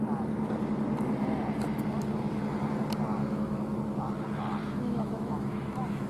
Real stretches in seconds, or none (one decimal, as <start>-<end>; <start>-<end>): 0.0-3.2; 3.8-4.6